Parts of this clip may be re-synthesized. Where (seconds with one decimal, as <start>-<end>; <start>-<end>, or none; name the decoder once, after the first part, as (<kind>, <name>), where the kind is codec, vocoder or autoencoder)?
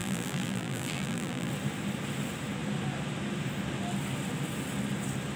0.0-1.5 (vocoder, BigVGAN v2)